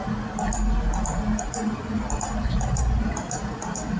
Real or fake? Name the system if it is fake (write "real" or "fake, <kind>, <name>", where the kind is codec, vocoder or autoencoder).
real